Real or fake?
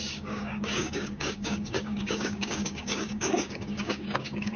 fake